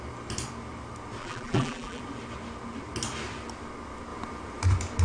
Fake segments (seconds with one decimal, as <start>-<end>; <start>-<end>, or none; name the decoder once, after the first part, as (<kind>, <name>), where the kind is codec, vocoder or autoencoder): 1.2-2.0 (vocoder, BigVGAN v2)